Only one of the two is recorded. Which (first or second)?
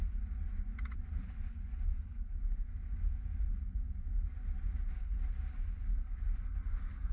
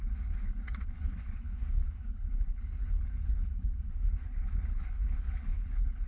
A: first